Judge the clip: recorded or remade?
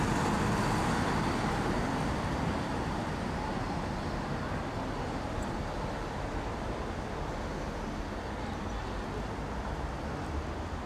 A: recorded